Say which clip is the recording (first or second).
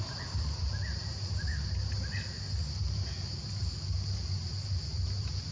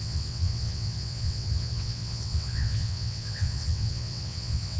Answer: first